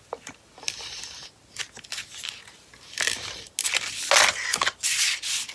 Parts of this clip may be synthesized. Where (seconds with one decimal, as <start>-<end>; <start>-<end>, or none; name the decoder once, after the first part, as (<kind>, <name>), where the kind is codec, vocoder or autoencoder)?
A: none